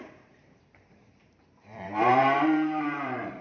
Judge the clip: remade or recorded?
remade